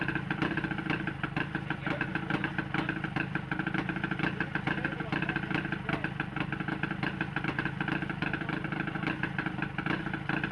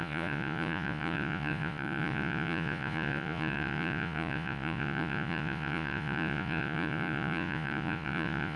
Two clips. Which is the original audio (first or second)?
first